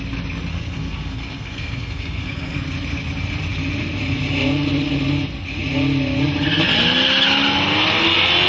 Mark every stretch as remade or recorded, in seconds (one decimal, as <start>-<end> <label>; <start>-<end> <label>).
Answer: 0.0-0.5 recorded; 0.5-2.6 remade; 2.6-8.5 recorded